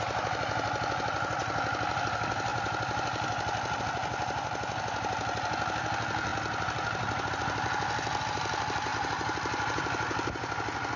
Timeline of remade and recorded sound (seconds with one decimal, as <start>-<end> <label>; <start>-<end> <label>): 0.0-11.0 recorded